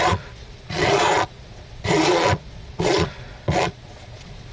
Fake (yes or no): yes